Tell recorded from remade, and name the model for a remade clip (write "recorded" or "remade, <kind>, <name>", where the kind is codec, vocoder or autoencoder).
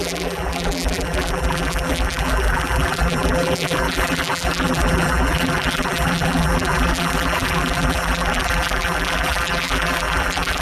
remade, vocoder, BigVGAN v2